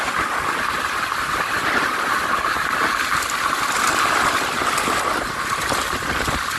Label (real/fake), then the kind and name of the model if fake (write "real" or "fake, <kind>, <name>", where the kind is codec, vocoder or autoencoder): real